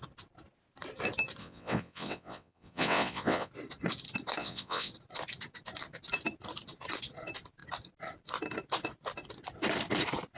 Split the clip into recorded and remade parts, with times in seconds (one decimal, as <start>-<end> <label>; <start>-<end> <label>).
0.0-1.4 recorded; 1.4-3.5 remade; 3.5-4.4 recorded; 4.4-4.9 remade; 4.9-10.4 recorded